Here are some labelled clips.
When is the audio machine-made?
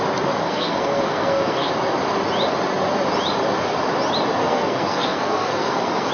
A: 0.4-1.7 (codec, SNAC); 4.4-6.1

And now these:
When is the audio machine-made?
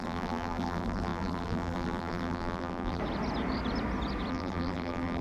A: 0.0-3.0 (vocoder, BigVGAN v2); 4.3-5.2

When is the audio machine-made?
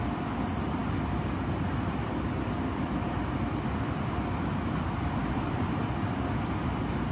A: 5.2-5.8 (vocoder, BigVGAN v2)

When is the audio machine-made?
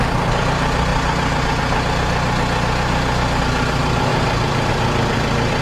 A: 4.1-4.7 (vocoder, BigVGAN v2)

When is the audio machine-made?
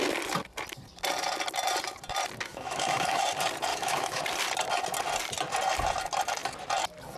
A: 2.5-3.2 (autoencoder, DAC-VAE); 3.7-4.2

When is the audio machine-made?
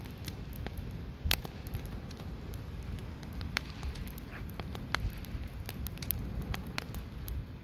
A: none